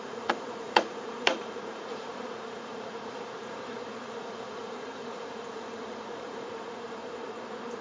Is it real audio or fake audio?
fake